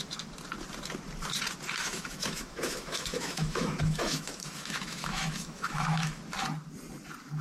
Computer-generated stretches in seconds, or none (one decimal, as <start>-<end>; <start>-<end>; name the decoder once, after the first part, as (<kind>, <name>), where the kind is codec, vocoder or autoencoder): 1.8-6.2 (autoencoder, DAC-VAE)